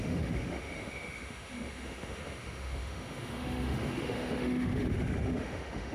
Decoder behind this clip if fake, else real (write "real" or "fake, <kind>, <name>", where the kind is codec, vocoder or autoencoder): fake, autoencoder, DAC-VAE